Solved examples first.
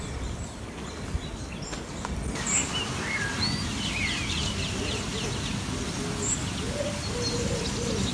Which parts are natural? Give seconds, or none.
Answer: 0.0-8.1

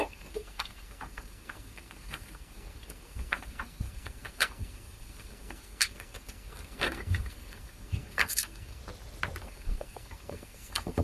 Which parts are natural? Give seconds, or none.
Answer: 8.8-9.4